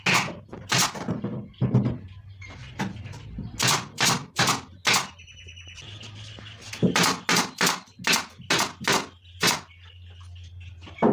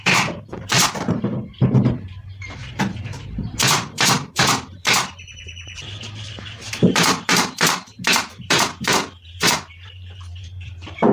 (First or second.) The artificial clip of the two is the second